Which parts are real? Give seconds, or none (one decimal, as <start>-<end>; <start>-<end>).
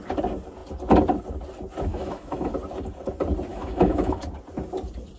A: 0.0-1.9; 2.5-3.5; 4.2-5.2